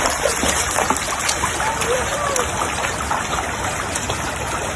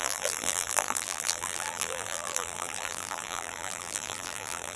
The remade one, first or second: second